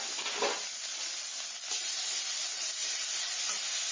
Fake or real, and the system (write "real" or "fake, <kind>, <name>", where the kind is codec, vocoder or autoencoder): real